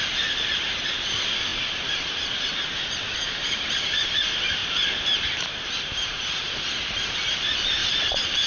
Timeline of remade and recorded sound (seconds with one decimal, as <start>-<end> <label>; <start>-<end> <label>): 0.0-0.9 recorded; 0.9-4.6 remade; 4.6-5.4 recorded; 5.4-8.5 remade